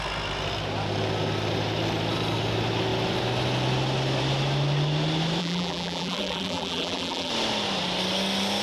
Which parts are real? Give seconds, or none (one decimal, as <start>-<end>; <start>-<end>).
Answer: 0.0-5.4; 7.3-8.6